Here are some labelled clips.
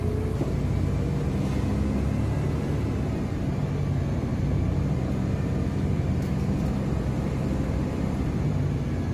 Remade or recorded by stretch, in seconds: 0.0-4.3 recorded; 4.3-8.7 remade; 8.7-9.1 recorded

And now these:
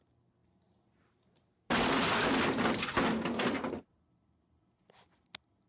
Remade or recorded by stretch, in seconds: 0.0-0.4 recorded; 0.4-3.8 remade; 3.8-5.7 recorded

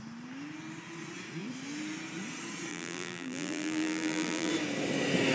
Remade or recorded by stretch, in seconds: 0.0-2.7 recorded; 2.7-4.5 remade; 4.5-5.3 recorded

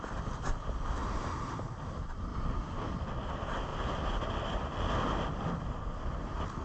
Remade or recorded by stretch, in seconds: 0.0-1.0 recorded; 1.0-1.7 remade; 1.7-6.6 recorded

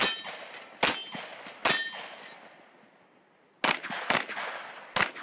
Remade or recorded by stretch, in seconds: 0.0-5.2 recorded

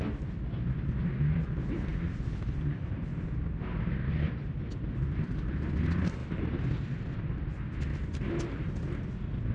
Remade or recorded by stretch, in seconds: 0.0-1.9 recorded; 1.9-5.4 remade; 5.4-6.2 recorded; 6.2-7.3 remade; 7.3-9.5 recorded

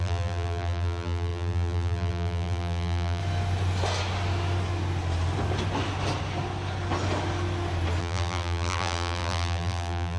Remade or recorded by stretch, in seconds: 0.0-3.2 remade; 3.2-8.0 recorded; 8.0-10.2 remade